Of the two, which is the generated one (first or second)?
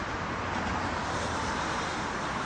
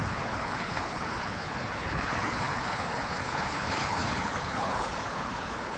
second